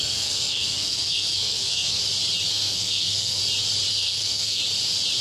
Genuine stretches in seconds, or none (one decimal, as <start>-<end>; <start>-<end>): 2.0-2.5; 3.4-3.9; 4.6-5.2